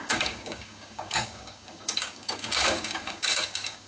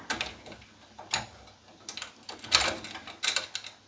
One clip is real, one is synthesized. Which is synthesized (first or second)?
first